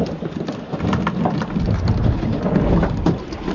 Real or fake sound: real